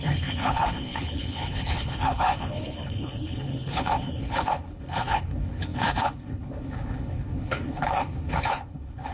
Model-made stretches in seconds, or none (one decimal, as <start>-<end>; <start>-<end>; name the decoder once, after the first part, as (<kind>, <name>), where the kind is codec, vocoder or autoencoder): 0.0-9.1 (codec, HILCodec)